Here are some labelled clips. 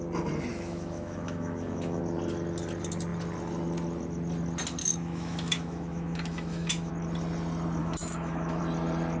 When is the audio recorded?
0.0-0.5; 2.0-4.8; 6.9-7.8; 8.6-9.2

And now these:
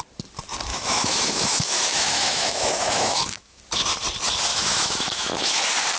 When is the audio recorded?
0.0-0.7; 3.6-4.5; 5.6-6.0

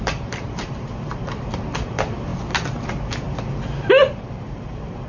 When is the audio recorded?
2.3-4.1

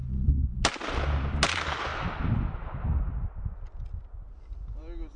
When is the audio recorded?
0.0-5.2

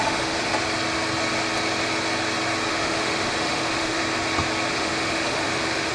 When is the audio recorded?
0.5-2.7; 4.0-4.7

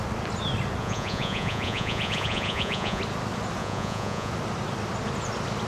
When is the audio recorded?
0.0-0.8; 3.0-3.6; 4.3-5.7

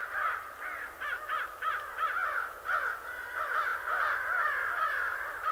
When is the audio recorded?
0.0-5.5